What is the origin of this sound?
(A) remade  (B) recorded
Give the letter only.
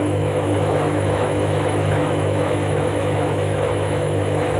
A